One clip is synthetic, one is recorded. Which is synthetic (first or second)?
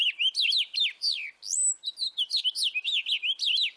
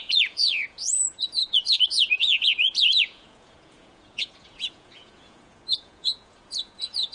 second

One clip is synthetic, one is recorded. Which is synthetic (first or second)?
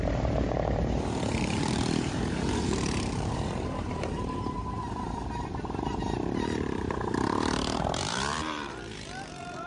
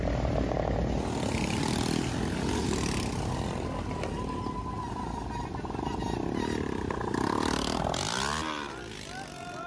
first